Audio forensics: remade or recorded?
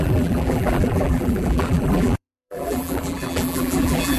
remade